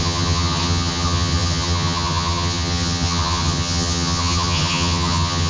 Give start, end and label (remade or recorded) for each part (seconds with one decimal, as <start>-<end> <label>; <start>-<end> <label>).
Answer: 0.0-5.5 remade

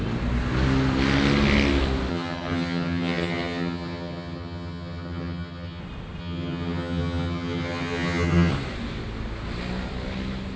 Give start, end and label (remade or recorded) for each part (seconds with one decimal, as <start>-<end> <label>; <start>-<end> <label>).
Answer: 0.0-2.1 recorded; 2.1-5.8 remade; 5.8-6.2 recorded; 6.2-8.5 remade; 8.5-10.6 recorded

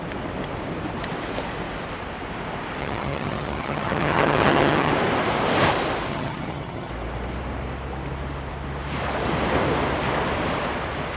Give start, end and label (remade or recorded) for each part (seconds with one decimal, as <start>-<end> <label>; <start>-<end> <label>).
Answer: 0.0-2.8 recorded; 2.8-4.9 remade; 4.9-6.1 recorded; 6.1-6.9 remade; 6.9-11.2 recorded

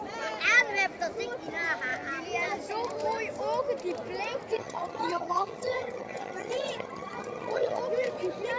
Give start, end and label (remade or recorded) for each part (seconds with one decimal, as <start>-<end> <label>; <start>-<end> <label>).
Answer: 0.0-4.5 recorded; 4.5-7.8 remade; 7.8-8.6 recorded

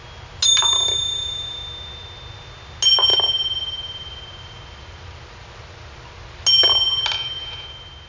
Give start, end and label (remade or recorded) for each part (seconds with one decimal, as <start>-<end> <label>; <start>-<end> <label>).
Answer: 0.0-8.1 recorded

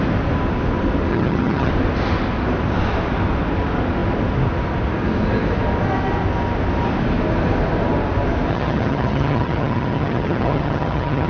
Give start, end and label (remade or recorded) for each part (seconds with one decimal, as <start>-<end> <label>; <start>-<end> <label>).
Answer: 0.0-1.1 recorded; 1.1-1.7 remade; 1.7-8.5 recorded; 8.5-11.3 remade